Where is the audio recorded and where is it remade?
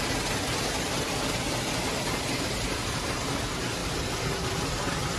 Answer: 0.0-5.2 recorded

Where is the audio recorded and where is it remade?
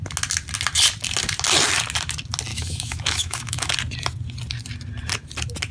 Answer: 0.0-2.5 recorded; 2.5-3.7 remade; 3.7-5.7 recorded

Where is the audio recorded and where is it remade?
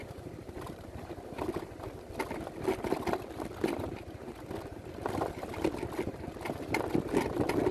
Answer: 0.0-1.1 remade; 1.1-7.7 recorded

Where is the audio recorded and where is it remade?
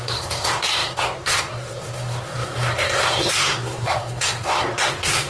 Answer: 0.0-5.3 remade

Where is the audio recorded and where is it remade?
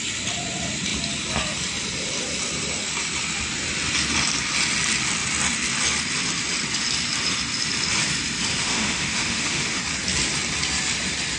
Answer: 0.0-8.5 recorded; 8.5-9.8 remade; 9.8-11.4 recorded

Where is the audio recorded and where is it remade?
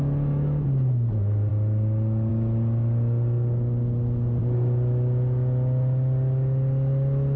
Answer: 0.0-7.4 recorded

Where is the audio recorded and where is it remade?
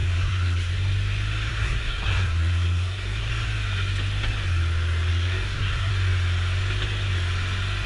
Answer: 0.0-0.7 remade; 0.7-1.5 recorded; 1.5-3.3 remade; 3.3-5.1 recorded; 5.1-5.9 remade; 5.9-7.9 recorded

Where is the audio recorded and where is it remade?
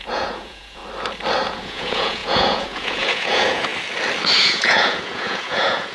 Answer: 0.0-0.8 remade; 0.8-1.5 recorded; 1.5-3.7 remade; 3.7-4.4 recorded; 4.4-5.9 remade